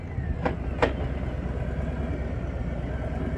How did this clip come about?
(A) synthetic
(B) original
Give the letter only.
B